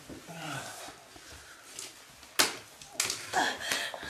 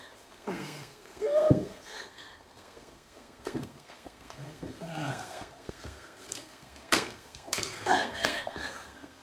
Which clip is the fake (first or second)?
second